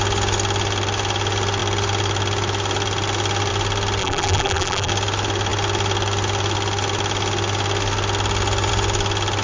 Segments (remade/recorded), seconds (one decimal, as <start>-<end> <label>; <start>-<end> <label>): 0.0-4.0 recorded; 4.0-4.9 remade; 4.9-9.4 recorded

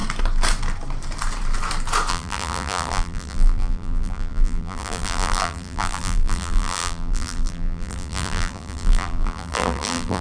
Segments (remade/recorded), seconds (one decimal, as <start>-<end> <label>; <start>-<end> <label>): 0.0-2.1 recorded; 2.1-10.2 remade

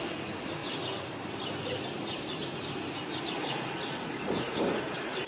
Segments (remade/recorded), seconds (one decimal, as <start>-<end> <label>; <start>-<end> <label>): 0.0-3.4 recorded; 3.4-5.3 remade

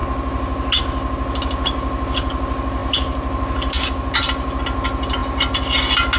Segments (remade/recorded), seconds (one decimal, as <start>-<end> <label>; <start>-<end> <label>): 0.0-6.2 recorded